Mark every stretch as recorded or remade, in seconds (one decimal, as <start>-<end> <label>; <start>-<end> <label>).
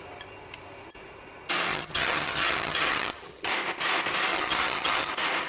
0.0-1.7 recorded; 1.7-3.5 remade; 3.5-4.3 recorded; 4.3-5.1 remade; 5.1-5.5 recorded